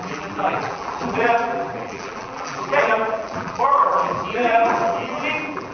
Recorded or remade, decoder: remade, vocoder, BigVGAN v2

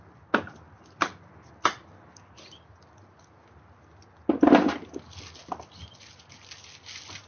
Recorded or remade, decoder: recorded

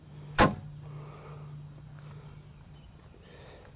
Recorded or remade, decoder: remade, vocoder, BigVGAN v2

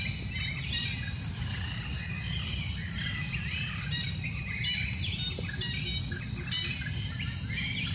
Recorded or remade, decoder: recorded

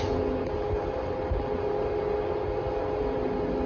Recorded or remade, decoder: recorded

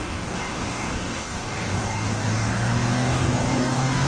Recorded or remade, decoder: remade, codec, DAC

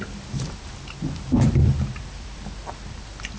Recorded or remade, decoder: recorded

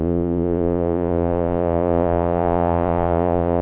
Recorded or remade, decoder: remade, vocoder, Vocos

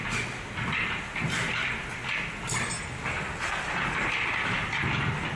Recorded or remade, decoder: recorded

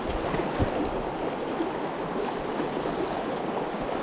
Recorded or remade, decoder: recorded